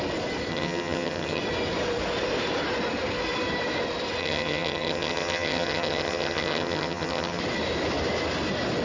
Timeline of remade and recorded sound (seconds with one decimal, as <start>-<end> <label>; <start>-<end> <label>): 0.0-0.5 recorded; 0.5-1.4 remade; 1.4-4.2 recorded; 4.2-7.4 remade; 7.4-8.8 recorded